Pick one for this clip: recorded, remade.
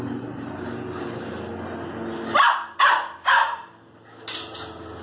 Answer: recorded